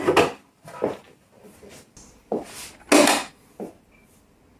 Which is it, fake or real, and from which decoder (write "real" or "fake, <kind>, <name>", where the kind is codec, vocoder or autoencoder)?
real